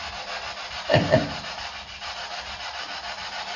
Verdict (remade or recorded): recorded